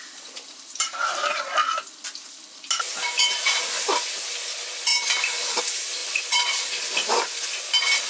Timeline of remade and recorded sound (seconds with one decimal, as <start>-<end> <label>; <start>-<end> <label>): 0.0-1.6 remade; 1.6-4.4 recorded; 4.4-4.9 remade; 4.9-5.6 recorded; 5.6-8.1 remade

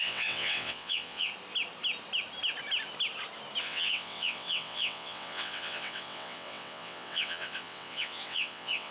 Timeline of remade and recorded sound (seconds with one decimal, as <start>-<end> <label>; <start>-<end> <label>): 0.0-1.3 remade; 1.3-3.6 recorded; 3.6-8.9 remade